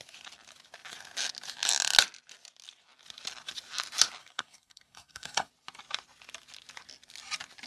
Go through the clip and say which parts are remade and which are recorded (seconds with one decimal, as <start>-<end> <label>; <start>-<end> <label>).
0.0-4.2 recorded; 4.2-5.5 remade; 5.5-7.7 recorded